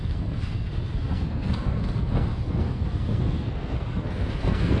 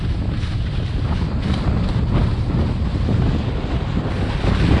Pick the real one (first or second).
second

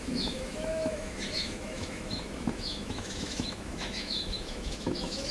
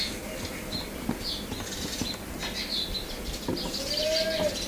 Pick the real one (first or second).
second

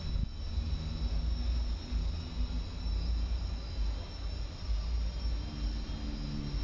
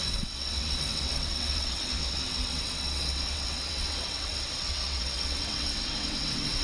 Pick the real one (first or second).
first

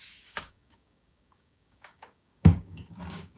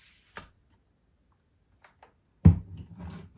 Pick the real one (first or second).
second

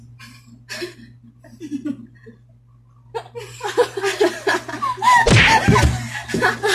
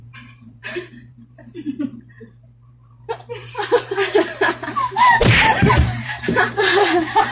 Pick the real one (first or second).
first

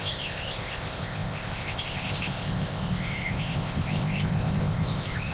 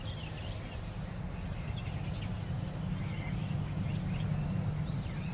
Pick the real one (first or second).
second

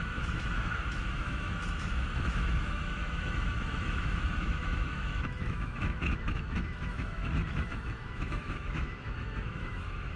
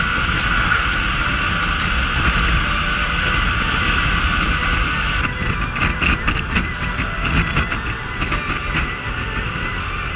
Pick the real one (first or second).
second